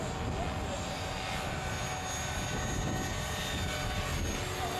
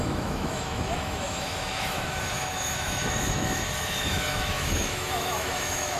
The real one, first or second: first